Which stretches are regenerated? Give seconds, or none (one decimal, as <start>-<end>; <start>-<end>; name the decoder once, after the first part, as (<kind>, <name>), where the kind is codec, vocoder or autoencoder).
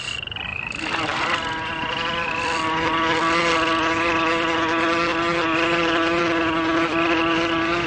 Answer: none